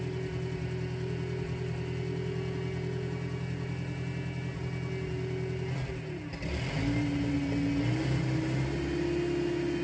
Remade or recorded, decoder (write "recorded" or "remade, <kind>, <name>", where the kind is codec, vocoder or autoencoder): recorded